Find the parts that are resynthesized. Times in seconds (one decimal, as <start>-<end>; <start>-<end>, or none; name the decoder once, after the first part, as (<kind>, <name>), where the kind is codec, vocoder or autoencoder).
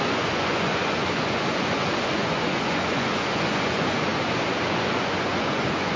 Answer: 0.0-6.0 (vocoder, Vocos)